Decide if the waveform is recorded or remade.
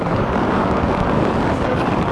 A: remade